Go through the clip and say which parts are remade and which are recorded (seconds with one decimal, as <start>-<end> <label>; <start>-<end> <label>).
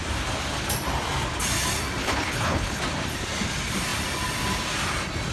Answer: 0.0-2.0 recorded; 2.0-2.8 remade; 2.8-5.3 recorded